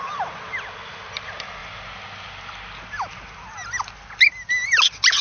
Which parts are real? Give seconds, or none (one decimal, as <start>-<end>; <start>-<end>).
0.0-5.2